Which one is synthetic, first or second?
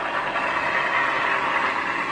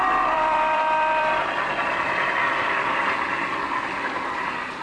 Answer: second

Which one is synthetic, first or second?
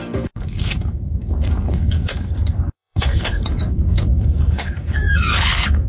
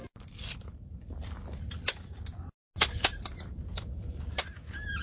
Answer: first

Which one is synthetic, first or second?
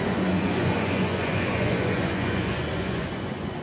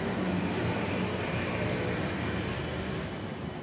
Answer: first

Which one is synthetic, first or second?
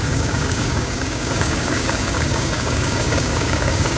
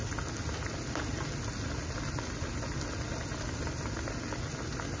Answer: first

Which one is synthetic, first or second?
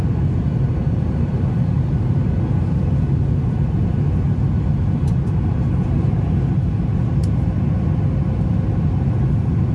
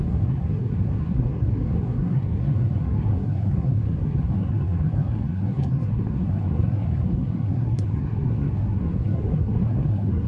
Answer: second